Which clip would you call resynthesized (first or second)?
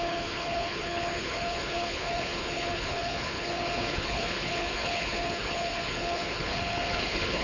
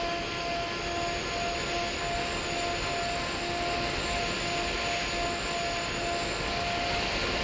first